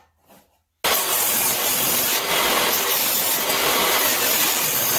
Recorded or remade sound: recorded